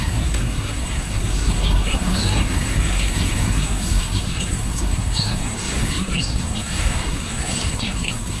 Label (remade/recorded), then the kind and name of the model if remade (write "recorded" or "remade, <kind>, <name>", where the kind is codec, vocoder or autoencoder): remade, codec, SNAC